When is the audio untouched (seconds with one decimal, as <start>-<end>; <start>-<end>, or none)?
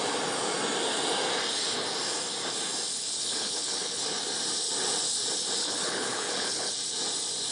0.0-2.9; 4.0-5.6; 6.7-7.5